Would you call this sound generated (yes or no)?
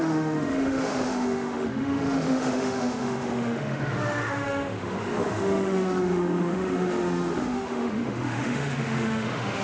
yes